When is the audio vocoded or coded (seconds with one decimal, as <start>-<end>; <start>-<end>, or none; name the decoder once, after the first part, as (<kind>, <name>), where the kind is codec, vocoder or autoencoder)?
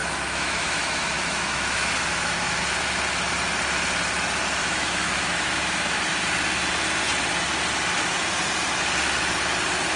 0.0-2.6 (autoencoder, DAC-VAE); 4.6-6.1